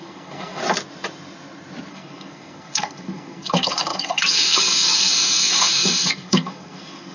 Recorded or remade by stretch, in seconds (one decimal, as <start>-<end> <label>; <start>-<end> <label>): 0.0-0.6 remade; 0.6-1.9 recorded; 1.9-7.1 remade